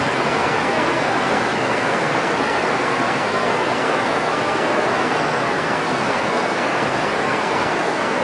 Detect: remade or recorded remade